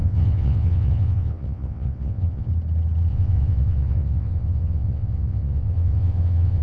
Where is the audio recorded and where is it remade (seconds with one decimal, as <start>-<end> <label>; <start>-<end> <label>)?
0.0-2.5 remade; 2.5-3.1 recorded; 3.1-6.6 remade